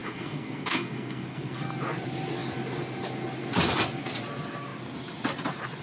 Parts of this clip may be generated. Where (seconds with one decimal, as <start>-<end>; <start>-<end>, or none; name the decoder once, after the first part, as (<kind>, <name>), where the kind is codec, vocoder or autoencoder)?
0.0-1.6 (codec, SNAC)